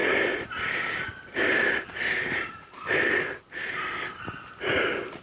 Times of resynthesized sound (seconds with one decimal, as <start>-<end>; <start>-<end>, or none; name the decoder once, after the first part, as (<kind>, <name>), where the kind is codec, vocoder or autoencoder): none